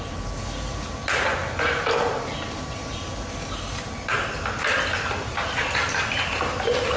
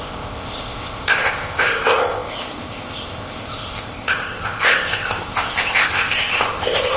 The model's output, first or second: second